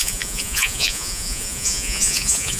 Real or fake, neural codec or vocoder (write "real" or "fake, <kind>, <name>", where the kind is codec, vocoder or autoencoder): fake, vocoder, Vocos